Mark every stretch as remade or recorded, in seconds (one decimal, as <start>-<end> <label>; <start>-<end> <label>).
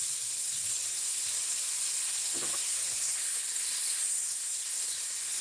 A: 0.0-0.4 recorded; 0.4-1.3 remade; 1.3-2.0 recorded; 2.0-5.4 remade